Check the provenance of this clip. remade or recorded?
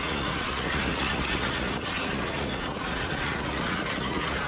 remade